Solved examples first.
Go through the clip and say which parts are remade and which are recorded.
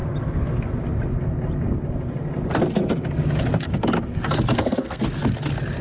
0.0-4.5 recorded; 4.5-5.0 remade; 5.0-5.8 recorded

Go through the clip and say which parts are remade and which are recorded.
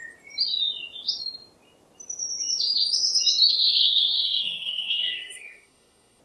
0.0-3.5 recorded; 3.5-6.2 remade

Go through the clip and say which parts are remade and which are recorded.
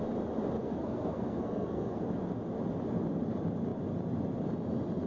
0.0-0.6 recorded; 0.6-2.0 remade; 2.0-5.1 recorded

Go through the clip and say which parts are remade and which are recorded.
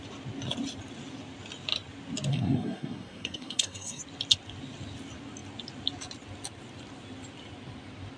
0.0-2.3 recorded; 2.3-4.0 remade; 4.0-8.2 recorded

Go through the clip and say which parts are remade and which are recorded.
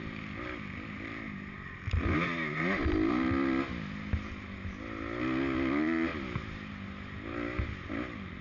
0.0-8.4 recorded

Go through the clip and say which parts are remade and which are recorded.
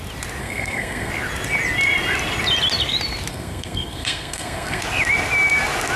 0.0-0.4 recorded; 0.4-1.1 remade; 1.1-3.3 recorded; 3.3-4.8 remade; 4.8-6.0 recorded